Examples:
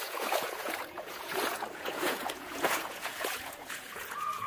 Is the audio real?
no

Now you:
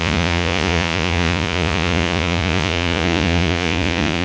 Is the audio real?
no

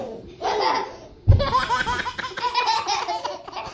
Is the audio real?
yes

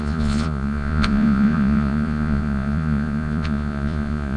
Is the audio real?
no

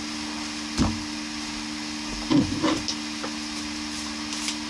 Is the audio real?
yes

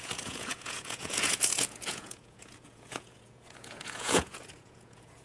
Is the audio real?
no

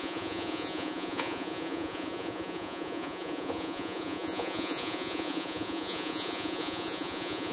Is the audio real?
no